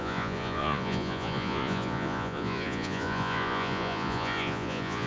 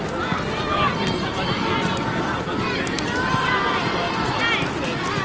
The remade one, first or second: first